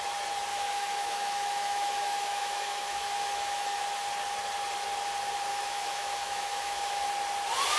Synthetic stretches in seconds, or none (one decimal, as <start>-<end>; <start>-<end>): 0.5-3.8; 5.5-7.1